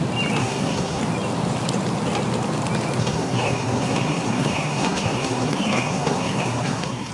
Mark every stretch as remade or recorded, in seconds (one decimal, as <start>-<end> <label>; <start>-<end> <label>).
0.0-0.4 recorded; 0.4-1.0 remade; 1.0-3.0 recorded; 3.0-7.1 remade